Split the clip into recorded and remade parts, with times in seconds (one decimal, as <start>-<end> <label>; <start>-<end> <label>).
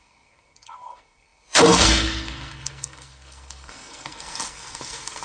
0.0-5.2 remade